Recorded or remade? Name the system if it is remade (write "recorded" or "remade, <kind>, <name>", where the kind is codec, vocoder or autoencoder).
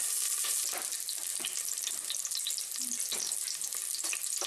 recorded